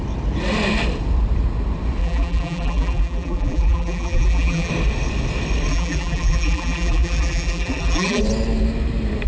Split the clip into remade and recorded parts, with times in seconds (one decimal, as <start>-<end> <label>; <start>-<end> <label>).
0.0-2.0 recorded; 2.0-4.7 remade; 4.7-5.7 recorded; 5.7-8.2 remade; 8.2-9.3 recorded